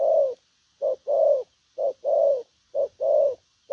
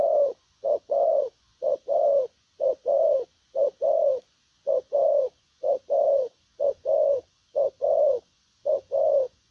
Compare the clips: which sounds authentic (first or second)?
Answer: first